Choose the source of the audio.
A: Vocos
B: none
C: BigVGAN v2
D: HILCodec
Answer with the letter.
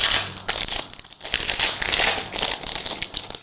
B